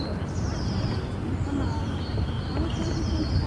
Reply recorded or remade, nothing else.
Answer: remade